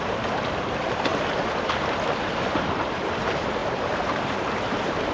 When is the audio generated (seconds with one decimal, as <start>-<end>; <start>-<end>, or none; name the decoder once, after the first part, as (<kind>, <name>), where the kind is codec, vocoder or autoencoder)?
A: 0.0-1.1 (vocoder, BigVGAN v2); 2.2-5.1